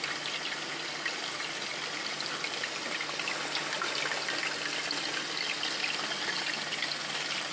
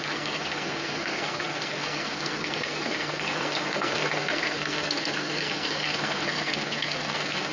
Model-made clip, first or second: second